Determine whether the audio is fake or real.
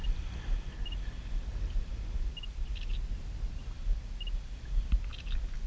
real